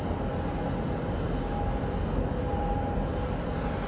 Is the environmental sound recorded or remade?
recorded